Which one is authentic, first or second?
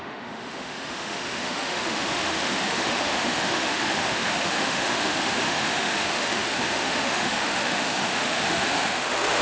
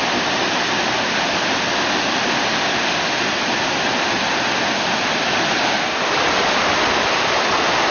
second